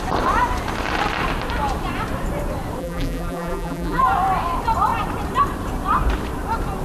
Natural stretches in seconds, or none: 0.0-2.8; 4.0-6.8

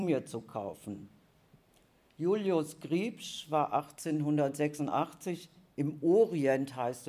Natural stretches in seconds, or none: 0.5-4.8

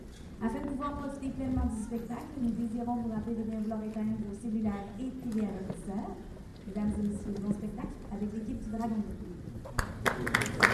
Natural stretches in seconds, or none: 0.0-1.8; 2.4-10.7

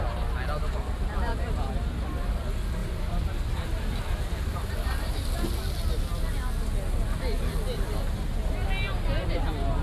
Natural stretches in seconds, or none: 0.0-2.8; 5.1-9.8

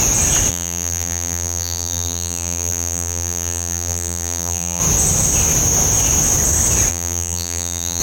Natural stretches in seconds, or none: 0.0-0.5; 4.8-6.9

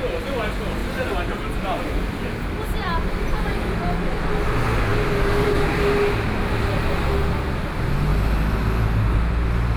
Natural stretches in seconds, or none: 0.0-0.8; 3.4-9.8

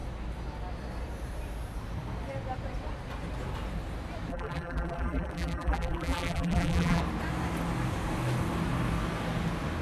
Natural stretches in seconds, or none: 0.0-4.3; 7.0-9.8